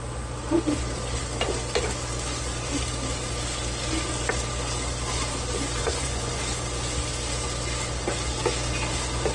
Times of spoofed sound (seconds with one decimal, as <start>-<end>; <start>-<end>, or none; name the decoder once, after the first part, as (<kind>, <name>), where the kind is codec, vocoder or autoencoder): 5.8-6.4 (vocoder, Vocos)